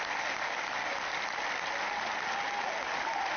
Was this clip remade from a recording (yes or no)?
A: no